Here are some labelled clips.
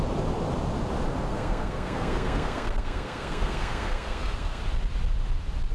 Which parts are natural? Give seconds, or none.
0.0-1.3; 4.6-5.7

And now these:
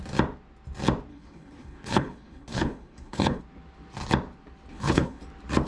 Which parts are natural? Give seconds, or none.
0.0-1.1; 3.4-4.7; 5.2-5.7

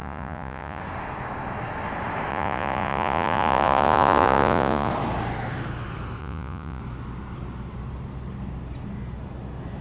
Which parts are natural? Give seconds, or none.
0.8-2.3; 4.9-6.2; 6.8-9.8

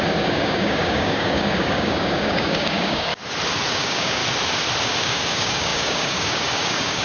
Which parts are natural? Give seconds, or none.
3.1-3.7; 4.2-4.8

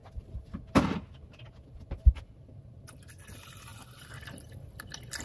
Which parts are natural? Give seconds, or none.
0.0-5.2